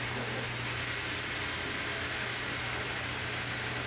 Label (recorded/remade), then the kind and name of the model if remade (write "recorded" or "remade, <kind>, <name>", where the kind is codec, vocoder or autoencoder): recorded